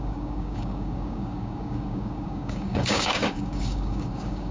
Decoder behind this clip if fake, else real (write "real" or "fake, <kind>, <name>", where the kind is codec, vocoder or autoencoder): fake, codec, DAC